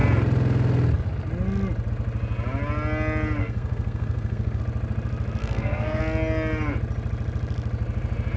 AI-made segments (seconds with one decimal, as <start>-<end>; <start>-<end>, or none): 3.4-4.6; 5.4-6.0